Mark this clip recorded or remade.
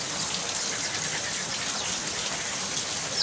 recorded